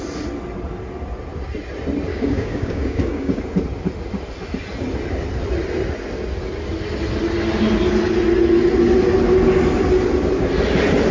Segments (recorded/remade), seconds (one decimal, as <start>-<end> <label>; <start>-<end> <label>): 0.0-2.1 recorded; 2.1-3.4 remade; 3.4-11.1 recorded